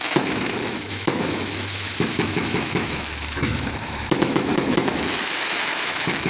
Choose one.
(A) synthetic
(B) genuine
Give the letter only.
A